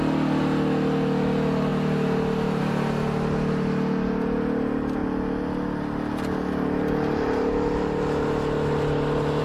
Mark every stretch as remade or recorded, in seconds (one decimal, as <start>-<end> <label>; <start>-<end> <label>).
0.0-9.4 recorded

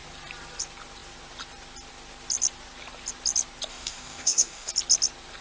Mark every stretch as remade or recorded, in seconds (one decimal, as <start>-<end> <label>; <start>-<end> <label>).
0.0-3.7 recorded; 3.7-4.7 remade; 4.7-5.4 recorded

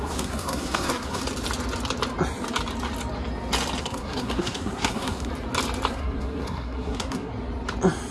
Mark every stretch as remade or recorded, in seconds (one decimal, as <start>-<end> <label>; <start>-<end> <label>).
0.0-1.2 remade; 1.2-3.8 recorded; 3.8-5.3 remade; 5.3-5.9 recorded; 5.9-7.3 remade; 7.3-8.1 recorded

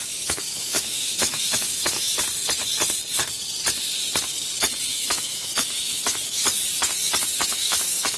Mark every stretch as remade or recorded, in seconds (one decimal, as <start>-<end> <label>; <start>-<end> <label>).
0.0-2.1 remade; 2.1-4.9 recorded; 4.9-6.6 remade; 6.6-7.4 recorded; 7.4-8.2 remade

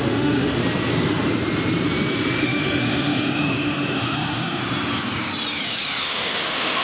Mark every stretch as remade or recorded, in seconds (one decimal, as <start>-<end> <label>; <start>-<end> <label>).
0.0-0.6 remade; 0.6-2.4 recorded; 2.4-4.6 remade; 4.6-6.0 recorded; 6.0-6.8 remade

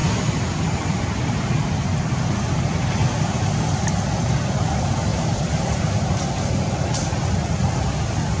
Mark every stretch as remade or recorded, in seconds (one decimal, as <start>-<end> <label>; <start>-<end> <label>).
0.0-5.1 recorded; 5.1-6.2 remade; 6.2-8.4 recorded

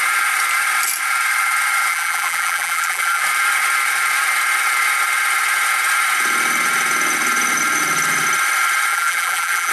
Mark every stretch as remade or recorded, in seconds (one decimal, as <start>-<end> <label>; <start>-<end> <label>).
0.0-1.9 recorded; 1.9-3.2 remade; 3.2-8.9 recorded; 8.9-9.7 remade

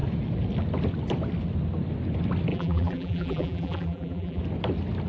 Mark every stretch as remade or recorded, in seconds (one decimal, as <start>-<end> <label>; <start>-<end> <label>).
0.0-2.5 recorded; 2.5-4.4 remade; 4.4-5.1 recorded